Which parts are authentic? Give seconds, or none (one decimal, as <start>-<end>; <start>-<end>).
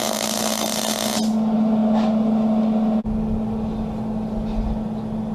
0.0-5.3